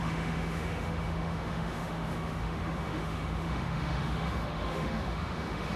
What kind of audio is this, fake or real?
fake